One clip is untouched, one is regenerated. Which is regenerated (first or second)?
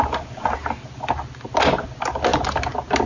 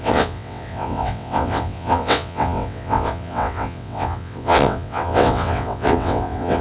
second